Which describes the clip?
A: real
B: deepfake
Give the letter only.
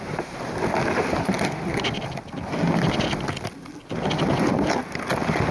A